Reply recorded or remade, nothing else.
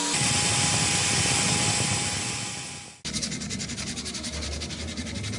recorded